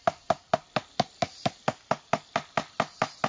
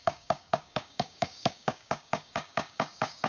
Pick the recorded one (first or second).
first